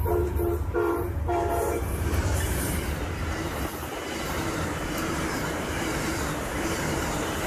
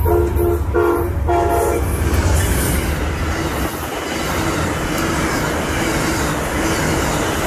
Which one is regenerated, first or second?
first